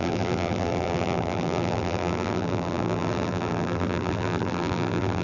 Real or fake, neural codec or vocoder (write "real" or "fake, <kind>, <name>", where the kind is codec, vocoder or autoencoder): fake, vocoder, BigVGAN v2